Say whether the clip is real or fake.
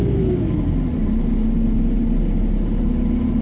real